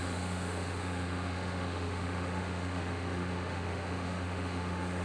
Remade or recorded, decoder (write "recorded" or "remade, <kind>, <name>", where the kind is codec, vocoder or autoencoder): remade, autoencoder, DAC-VAE